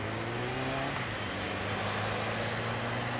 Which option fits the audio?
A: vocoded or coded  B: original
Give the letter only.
B